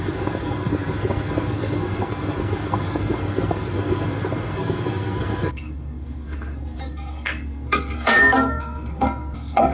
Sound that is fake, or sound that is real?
fake